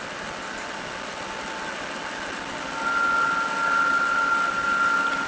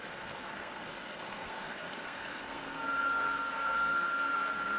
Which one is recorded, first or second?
first